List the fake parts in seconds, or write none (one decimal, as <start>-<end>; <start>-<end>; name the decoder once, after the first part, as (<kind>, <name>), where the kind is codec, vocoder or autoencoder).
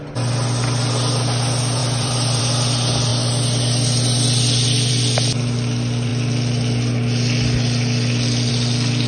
1.8-2.4 (vocoder, BigVGAN v2)